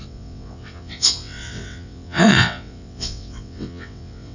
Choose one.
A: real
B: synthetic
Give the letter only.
B